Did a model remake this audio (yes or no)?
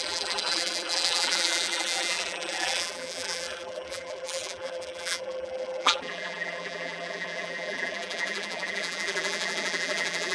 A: yes